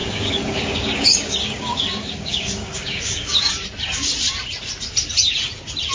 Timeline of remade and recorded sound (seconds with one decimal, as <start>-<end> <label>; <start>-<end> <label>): 0.0-3.5 remade; 3.5-5.9 recorded